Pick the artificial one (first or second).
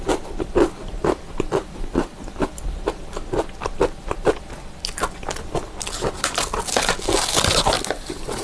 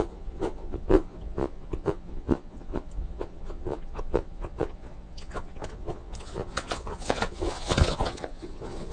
second